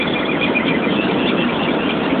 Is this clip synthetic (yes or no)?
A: no